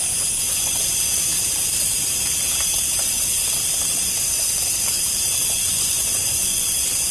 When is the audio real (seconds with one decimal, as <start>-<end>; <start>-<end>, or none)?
1.1-5.4